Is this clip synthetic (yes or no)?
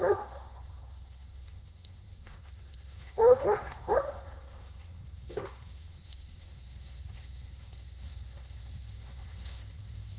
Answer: yes